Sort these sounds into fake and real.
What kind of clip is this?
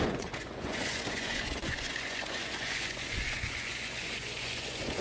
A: fake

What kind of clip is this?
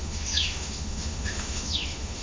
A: fake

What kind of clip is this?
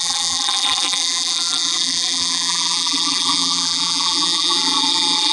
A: fake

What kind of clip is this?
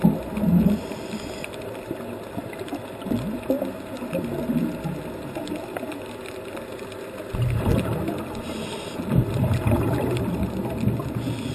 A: real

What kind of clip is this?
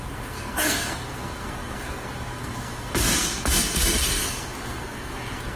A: fake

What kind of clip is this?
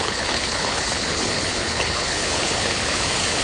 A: fake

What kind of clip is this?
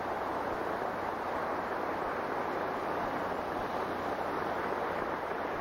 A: real